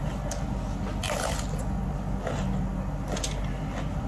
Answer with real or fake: real